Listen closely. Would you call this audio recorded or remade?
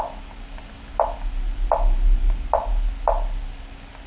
recorded